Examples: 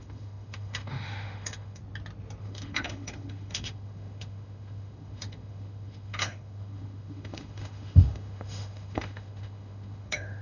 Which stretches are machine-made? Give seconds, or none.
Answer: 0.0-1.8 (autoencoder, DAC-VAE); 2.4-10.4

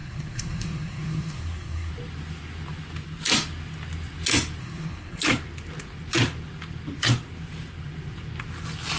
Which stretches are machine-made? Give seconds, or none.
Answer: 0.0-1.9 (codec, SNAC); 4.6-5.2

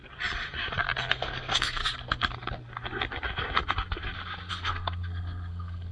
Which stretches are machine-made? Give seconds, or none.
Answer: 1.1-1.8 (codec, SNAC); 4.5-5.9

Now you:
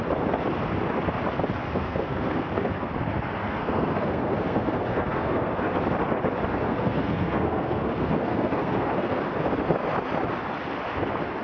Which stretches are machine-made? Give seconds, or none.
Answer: 1.6-2.9 (codec, SNAC); 3.4-5.8; 6.5-9.2

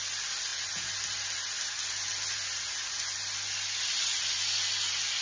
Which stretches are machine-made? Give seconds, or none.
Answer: none

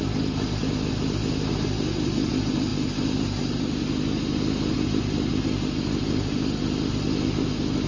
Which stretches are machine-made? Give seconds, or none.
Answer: none

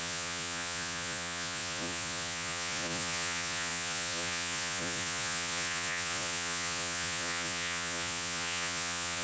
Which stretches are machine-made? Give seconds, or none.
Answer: 0.0-9.2 (vocoder, Vocos)